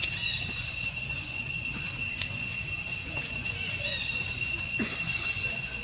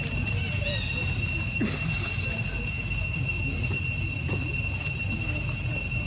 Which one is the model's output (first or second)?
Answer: first